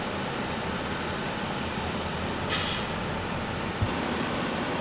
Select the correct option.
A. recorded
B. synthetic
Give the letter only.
A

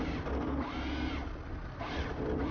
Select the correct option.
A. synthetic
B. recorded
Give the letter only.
B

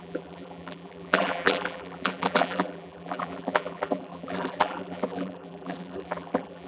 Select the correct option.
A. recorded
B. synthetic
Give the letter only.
B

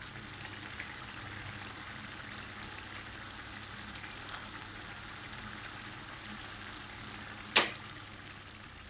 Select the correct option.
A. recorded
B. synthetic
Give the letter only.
A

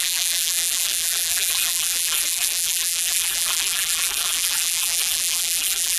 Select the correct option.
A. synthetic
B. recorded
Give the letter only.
A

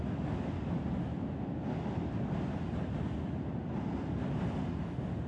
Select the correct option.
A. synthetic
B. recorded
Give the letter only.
B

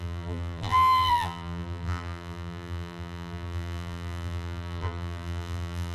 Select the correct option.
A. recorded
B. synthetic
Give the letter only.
B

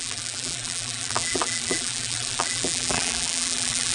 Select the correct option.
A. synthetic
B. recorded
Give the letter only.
A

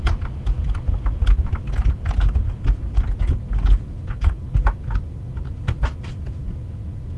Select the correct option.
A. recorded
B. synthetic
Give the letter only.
A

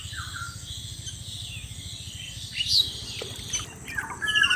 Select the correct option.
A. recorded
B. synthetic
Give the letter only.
A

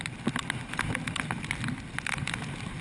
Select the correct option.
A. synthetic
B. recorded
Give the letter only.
B